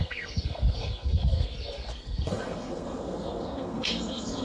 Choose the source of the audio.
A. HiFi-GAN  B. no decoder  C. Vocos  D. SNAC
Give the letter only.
D